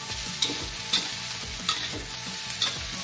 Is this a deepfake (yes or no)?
yes